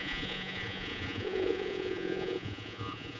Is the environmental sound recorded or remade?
remade